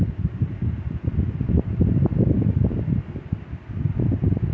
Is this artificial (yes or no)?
no